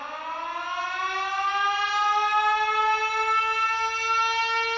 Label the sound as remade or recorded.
recorded